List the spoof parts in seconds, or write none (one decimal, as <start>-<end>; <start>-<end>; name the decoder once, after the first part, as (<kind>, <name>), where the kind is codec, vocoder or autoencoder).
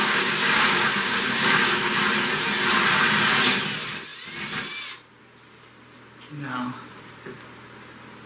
0.0-2.0 (codec, DAC)